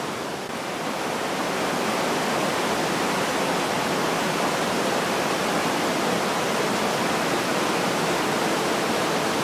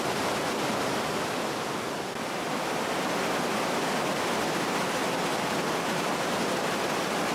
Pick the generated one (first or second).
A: first